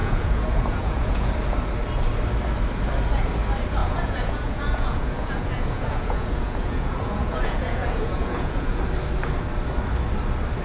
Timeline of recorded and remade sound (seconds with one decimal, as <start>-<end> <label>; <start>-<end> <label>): 0.0-1.3 remade; 1.3-3.8 recorded; 3.8-8.8 remade; 8.8-10.6 recorded